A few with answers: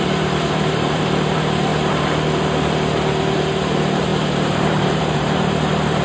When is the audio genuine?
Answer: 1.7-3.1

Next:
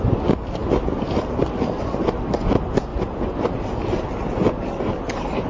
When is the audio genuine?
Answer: 0.0-5.5

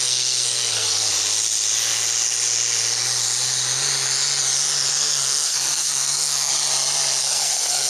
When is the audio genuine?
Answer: 1.1-4.9; 6.5-7.2

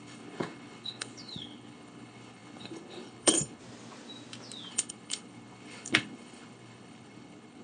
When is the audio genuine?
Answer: 3.6-4.7

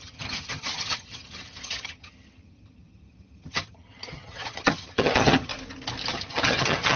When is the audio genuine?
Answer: 5.5-6.1

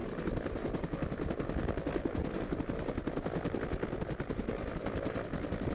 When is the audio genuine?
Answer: 0.0-5.7